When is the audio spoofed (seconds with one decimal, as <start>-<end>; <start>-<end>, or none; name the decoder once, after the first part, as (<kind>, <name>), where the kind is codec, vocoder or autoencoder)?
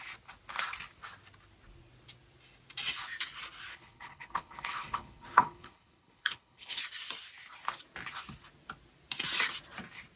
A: 3.7-6.8 (codec, HILCodec)